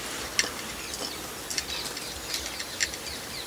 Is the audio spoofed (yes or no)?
no